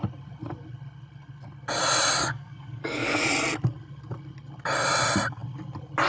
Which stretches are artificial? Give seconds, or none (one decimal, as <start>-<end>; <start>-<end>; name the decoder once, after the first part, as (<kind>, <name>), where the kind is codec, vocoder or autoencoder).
2.2-3.2 (codec, DAC)